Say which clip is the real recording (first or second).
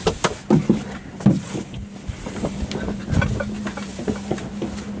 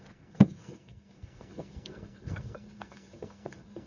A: first